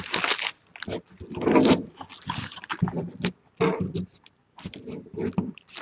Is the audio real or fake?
real